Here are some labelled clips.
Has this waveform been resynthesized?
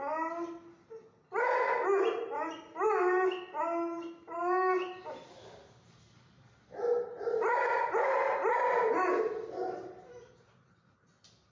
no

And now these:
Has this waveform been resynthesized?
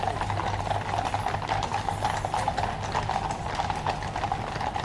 no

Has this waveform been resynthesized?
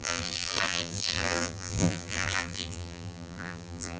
yes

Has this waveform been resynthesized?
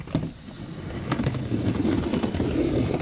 no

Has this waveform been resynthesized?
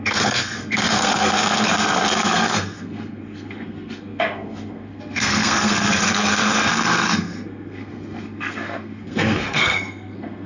yes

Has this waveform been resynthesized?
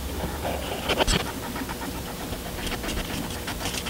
no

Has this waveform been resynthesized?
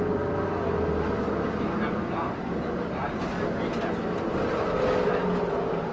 no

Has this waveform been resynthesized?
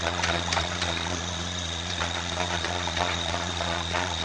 yes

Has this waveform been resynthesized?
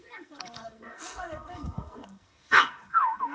yes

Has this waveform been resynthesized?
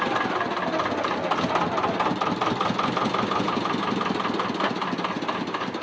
no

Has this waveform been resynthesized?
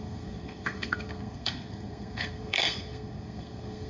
yes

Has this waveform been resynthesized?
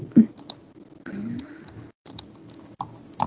no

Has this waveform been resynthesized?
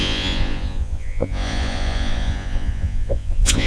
yes